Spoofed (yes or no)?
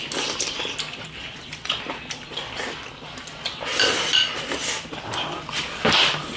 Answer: no